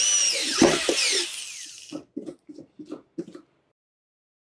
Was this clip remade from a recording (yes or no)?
no